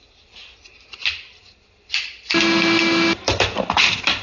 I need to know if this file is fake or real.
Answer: real